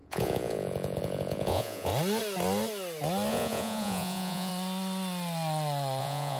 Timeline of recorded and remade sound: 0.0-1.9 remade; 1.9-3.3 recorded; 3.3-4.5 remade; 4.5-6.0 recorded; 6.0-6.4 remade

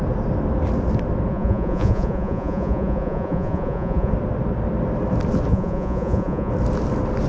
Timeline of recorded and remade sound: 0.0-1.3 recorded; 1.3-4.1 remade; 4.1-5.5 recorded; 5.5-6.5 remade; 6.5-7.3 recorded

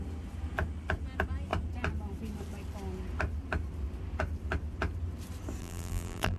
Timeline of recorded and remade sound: 0.0-5.6 recorded; 5.6-6.4 remade